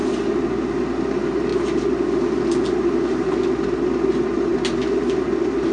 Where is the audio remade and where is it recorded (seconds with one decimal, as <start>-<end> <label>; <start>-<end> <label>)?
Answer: 0.0-5.7 recorded